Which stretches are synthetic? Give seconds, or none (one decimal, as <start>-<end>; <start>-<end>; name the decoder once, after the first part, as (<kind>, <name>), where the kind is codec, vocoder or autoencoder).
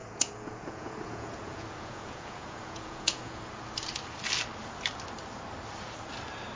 0.0-3.6 (vocoder, Vocos)